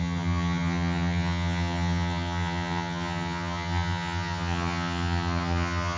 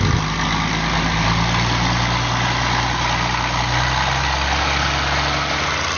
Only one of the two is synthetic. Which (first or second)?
first